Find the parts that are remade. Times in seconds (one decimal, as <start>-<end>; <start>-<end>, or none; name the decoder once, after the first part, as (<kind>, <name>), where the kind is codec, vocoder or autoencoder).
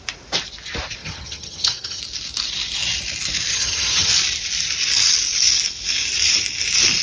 1.0-2.0 (vocoder, HiFi-GAN); 3.5-4.1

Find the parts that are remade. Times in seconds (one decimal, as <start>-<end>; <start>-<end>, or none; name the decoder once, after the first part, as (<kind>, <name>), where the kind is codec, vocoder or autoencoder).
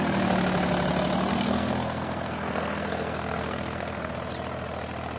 1.3-4.1 (codec, SNAC)